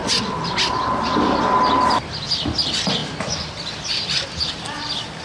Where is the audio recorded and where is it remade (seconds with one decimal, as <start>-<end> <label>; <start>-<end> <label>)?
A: 0.0-5.2 recorded